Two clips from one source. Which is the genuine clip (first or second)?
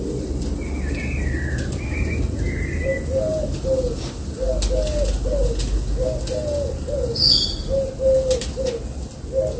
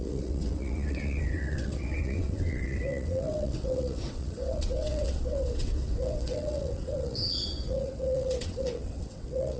first